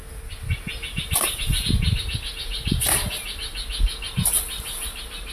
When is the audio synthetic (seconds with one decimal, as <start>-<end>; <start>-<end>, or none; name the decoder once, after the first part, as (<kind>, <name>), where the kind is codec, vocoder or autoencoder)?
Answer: 2.0-3.4 (vocoder, BigVGAN v2); 4.1-5.3